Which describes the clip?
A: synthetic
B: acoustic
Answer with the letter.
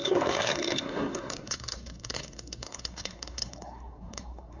A